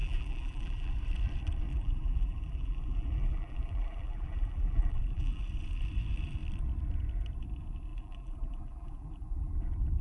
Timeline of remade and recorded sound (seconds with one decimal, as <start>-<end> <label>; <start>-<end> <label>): 0.0-0.9 remade; 0.9-1.7 recorded; 1.7-5.4 remade; 5.4-7.9 recorded; 7.9-9.5 remade; 9.5-10.0 recorded